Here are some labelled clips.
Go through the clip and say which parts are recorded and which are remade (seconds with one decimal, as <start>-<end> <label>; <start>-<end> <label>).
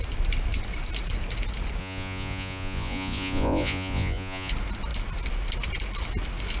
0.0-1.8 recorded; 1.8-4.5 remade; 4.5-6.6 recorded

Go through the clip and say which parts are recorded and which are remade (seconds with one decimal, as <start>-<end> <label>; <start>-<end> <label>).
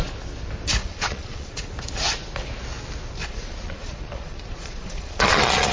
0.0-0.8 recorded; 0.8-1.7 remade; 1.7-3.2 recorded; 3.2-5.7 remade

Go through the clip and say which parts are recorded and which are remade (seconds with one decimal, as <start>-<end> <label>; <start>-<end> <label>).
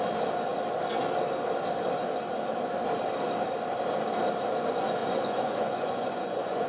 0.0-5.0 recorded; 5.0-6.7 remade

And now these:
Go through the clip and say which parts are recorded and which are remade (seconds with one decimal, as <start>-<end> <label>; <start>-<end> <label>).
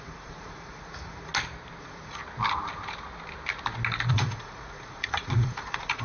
0.0-1.3 remade; 1.3-1.8 recorded; 1.8-2.2 remade; 2.2-4.1 recorded; 4.1-6.0 remade